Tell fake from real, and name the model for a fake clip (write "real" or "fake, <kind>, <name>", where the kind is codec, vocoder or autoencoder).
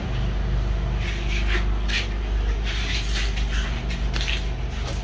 real